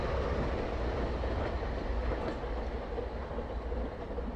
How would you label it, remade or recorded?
recorded